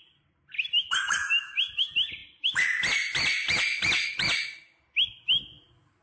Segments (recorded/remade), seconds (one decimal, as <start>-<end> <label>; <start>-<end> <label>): 0.0-6.0 recorded